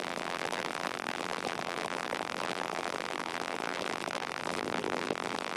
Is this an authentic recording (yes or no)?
no